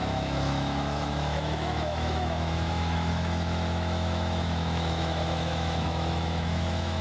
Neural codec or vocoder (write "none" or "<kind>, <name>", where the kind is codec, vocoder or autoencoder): autoencoder, DAC-VAE